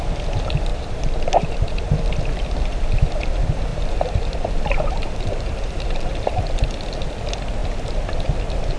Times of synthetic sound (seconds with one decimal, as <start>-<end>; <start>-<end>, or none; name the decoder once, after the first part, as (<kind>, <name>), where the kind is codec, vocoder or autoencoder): 0.7-1.9 (vocoder, BigVGAN v2); 3.7-6.4